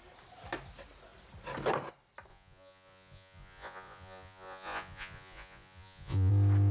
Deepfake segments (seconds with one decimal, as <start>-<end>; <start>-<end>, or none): 2.3-6.3